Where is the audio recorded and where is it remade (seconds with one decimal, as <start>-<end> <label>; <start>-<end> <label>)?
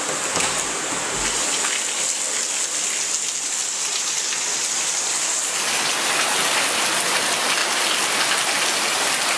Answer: 0.0-3.6 recorded; 3.6-5.9 remade; 5.9-9.4 recorded